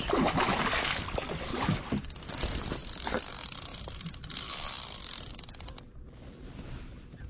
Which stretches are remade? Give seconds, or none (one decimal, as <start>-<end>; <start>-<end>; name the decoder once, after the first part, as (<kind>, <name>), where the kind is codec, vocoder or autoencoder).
none